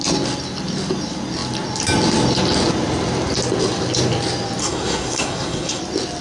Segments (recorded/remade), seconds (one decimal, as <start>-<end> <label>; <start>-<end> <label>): 0.0-4.6 recorded; 4.6-5.8 remade; 5.8-6.2 recorded